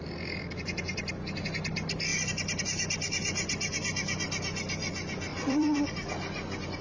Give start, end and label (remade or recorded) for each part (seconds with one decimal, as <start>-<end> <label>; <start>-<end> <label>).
0.0-2.1 recorded; 2.1-2.6 remade; 2.6-5.3 recorded; 5.3-5.9 remade; 5.9-6.8 recorded